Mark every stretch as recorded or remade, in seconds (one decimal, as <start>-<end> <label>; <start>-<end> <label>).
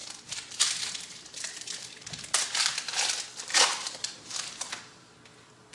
0.0-1.8 recorded; 1.8-2.4 remade; 2.4-3.5 recorded; 3.5-4.7 remade; 4.7-5.7 recorded